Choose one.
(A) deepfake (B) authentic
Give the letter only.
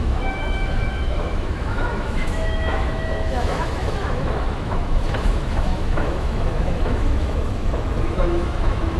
A